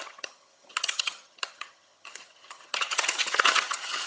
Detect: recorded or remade remade